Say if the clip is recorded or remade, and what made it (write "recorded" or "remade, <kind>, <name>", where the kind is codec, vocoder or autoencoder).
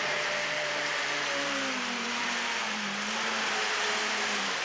remade, vocoder, BigVGAN v2